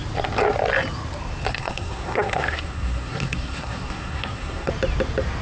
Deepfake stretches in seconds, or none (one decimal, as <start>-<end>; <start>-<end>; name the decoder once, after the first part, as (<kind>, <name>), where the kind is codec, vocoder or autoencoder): 1.5-4.7 (codec, SNAC)